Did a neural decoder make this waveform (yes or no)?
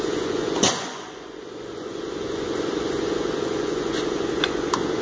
yes